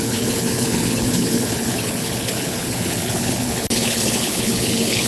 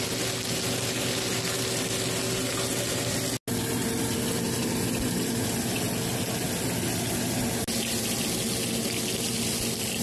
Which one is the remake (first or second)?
first